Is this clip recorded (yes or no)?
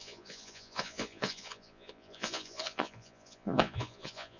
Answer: no